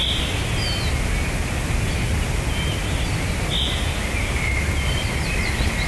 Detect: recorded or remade recorded